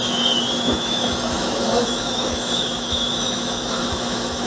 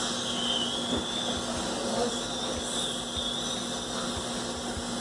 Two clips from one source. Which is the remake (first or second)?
first